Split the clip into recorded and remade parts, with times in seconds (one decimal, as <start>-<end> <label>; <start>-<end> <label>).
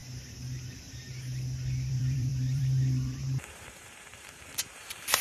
0.0-1.9 recorded; 1.9-5.2 remade